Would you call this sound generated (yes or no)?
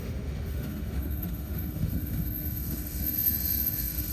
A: yes